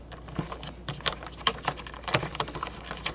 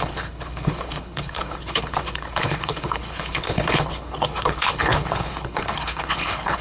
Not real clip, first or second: second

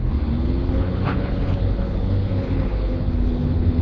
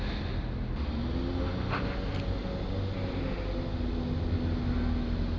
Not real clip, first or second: first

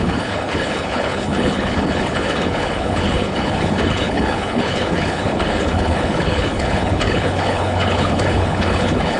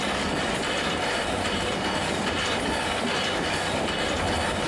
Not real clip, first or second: first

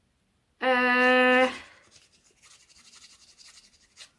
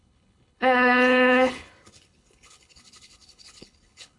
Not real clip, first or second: second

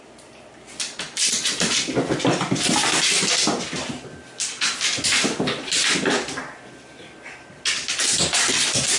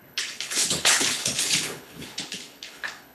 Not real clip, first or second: second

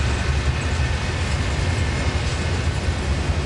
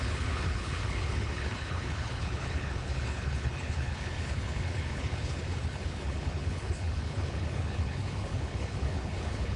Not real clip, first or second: second